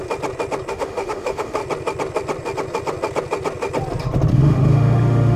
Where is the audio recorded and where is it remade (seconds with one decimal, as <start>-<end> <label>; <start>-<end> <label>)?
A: 0.0-0.7 recorded; 0.7-1.6 remade; 1.6-4.3 recorded; 4.3-5.4 remade